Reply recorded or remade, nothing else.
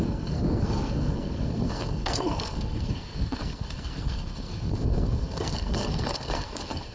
remade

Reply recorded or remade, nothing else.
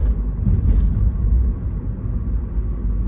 recorded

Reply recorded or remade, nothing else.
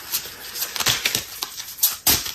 recorded